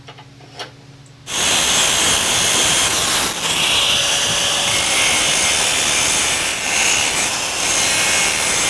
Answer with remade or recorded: recorded